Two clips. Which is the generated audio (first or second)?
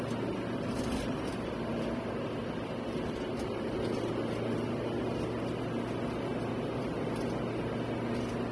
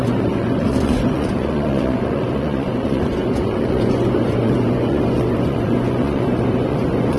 second